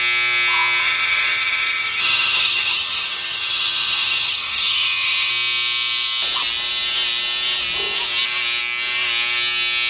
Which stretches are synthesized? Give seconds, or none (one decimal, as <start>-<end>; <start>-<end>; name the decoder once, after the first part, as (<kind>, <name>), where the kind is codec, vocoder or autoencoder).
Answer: 0.8-5.3 (vocoder, HiFi-GAN)